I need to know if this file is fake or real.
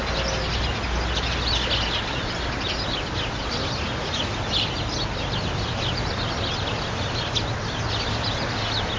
real